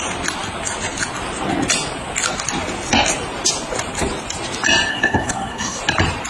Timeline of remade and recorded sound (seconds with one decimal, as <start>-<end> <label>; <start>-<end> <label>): 0.0-4.9 recorded; 4.9-5.8 remade; 5.8-6.3 recorded

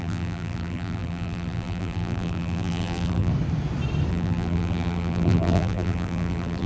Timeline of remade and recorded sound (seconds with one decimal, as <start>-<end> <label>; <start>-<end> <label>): 0.0-3.3 remade; 3.3-4.1 recorded; 4.1-6.7 remade

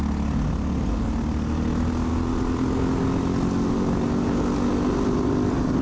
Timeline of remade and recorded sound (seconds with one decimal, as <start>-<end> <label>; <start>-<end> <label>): 0.0-5.8 recorded

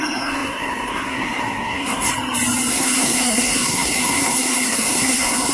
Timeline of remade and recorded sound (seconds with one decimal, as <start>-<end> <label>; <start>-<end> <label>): 0.0-2.1 remade; 2.1-2.7 recorded; 2.7-5.5 remade